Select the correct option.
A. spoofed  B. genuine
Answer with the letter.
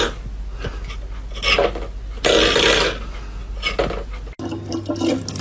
B